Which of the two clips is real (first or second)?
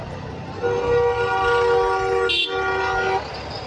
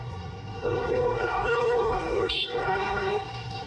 first